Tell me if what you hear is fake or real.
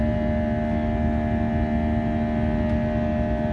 real